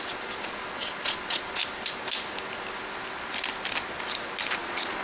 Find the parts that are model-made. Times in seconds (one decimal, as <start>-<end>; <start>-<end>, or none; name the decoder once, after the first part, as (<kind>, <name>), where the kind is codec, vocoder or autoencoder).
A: 0.0-1.6 (vocoder, Vocos); 4.6-5.0